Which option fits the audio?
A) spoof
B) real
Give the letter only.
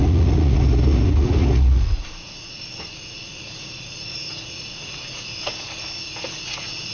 A